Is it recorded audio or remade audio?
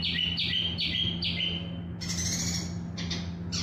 recorded